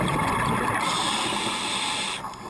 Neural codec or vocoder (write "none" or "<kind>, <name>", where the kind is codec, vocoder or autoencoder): none